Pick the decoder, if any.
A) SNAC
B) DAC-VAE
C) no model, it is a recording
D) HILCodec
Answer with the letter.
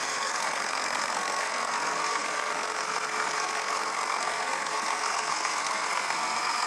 A